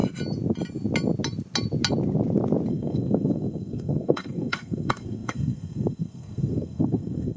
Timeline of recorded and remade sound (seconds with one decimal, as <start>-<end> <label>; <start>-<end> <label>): 0.0-2.7 recorded; 2.7-7.4 remade